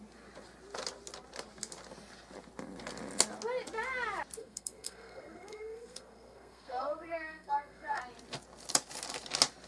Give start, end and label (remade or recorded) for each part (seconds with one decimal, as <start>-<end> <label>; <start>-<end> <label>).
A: 0.0-4.4 recorded; 4.4-8.0 remade; 8.0-9.7 recorded

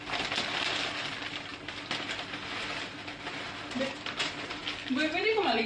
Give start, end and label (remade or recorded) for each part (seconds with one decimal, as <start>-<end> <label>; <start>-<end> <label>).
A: 0.0-5.7 recorded

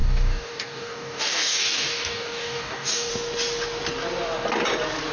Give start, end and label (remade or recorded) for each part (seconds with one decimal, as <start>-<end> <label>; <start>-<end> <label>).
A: 0.0-3.1 remade; 3.1-5.1 recorded

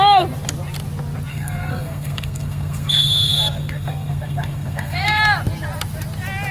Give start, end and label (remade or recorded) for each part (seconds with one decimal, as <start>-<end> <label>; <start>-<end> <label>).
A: 0.0-1.3 recorded; 1.3-5.2 remade; 5.2-6.5 recorded

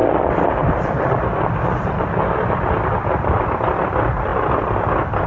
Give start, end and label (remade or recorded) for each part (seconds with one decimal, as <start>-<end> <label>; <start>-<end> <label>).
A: 0.0-5.3 recorded

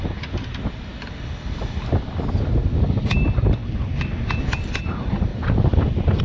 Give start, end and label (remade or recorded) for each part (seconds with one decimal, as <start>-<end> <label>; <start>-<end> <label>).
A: 0.0-5.3 recorded; 5.3-6.2 remade